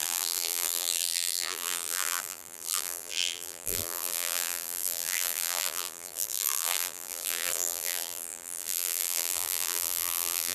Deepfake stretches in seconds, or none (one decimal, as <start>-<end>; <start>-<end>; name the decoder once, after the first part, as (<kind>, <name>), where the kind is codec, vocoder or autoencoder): 0.0-10.5 (vocoder, BigVGAN v2)